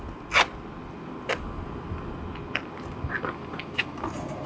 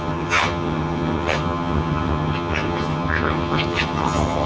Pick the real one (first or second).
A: first